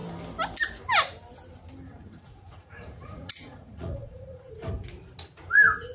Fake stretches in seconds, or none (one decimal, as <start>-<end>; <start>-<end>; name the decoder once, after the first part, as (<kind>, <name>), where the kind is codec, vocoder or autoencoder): 1.9-4.5 (vocoder, Vocos)